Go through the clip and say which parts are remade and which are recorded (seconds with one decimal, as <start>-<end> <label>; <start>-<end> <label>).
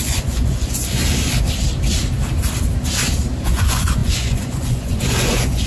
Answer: 0.0-1.0 remade; 1.0-3.4 recorded; 3.4-5.7 remade